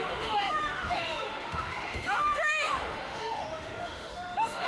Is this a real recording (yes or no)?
no